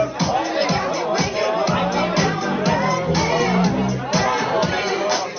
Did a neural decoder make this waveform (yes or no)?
no